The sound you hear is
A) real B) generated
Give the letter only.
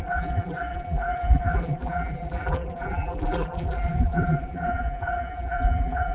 B